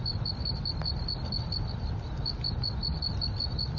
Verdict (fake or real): real